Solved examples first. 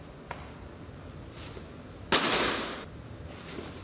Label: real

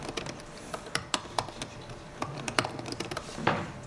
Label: fake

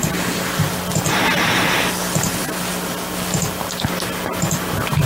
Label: real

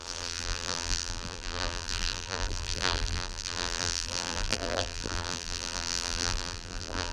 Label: fake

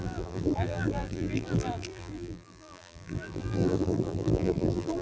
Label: fake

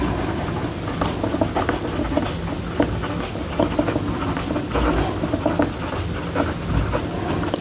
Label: real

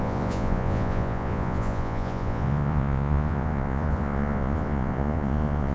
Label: fake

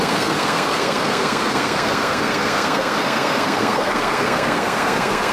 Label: fake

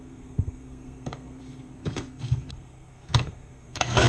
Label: fake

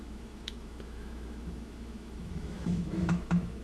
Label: fake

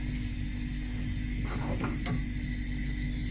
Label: real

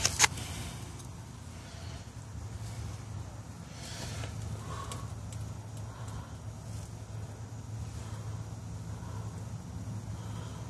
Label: real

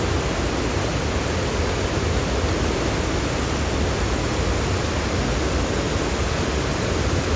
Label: real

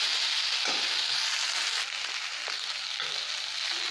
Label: real